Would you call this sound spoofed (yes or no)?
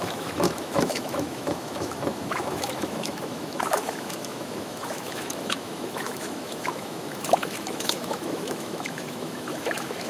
yes